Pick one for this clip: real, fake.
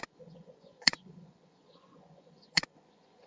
fake